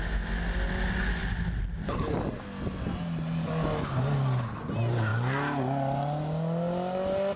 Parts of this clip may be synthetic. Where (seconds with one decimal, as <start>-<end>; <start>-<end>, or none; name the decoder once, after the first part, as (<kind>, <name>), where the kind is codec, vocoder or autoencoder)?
none